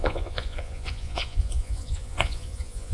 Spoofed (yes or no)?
yes